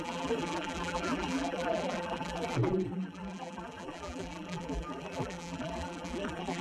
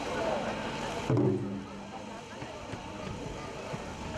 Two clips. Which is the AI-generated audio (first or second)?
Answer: first